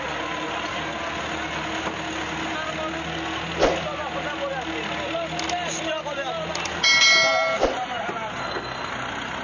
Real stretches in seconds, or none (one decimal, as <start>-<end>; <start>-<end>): 0.0-8.4; 8.9-9.4